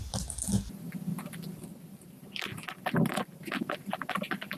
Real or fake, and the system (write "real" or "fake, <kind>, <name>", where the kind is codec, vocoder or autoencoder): real